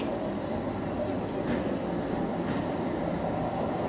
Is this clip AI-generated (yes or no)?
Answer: no